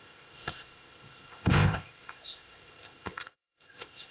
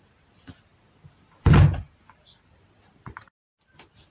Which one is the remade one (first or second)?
first